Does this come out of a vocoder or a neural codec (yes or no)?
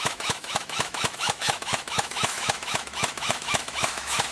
yes